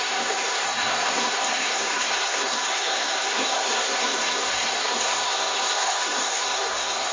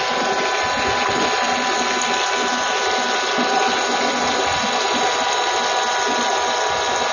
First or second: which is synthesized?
first